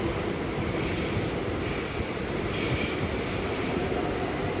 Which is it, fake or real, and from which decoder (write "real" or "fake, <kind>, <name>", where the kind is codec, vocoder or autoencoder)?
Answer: real